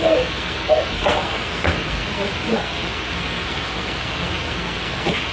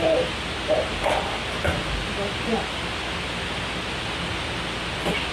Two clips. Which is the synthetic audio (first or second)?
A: first